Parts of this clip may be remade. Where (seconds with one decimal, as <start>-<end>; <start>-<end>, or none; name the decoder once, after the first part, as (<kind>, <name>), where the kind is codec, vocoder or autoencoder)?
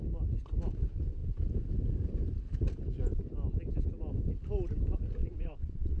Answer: 5.2-6.0 (vocoder, WaveNeXt)